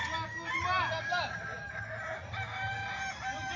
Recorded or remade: recorded